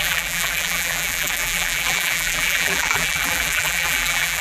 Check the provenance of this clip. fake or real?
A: fake